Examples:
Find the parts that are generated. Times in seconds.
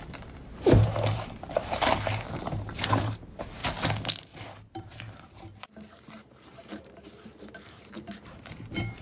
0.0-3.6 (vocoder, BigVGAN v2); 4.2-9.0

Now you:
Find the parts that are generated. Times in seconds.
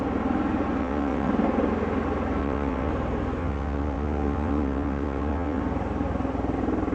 0.8-1.3 (vocoder, WaveNeXt); 2.4-2.9; 3.4-5.6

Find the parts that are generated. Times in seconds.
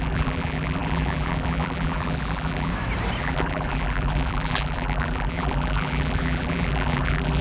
0.0-2.7 (vocoder, BigVGAN v2); 3.2-7.4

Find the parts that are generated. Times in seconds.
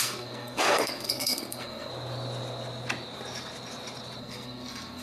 0.0-1.9 (codec, SNAC); 4.2-5.0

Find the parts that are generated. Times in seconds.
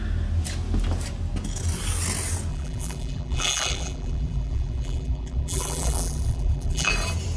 2.5-6.9 (vocoder, BigVGAN v2)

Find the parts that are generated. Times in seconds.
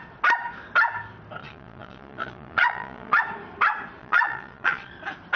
1.4-3.2 (vocoder, Vocos); 4.0-4.9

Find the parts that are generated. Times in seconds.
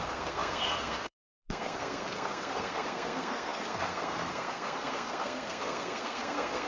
0.0-6.7 (codec, SNAC)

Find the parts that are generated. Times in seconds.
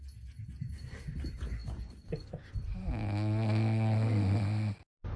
none